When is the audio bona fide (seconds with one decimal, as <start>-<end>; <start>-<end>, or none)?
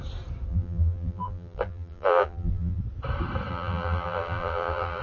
0.0-0.5; 2.8-3.5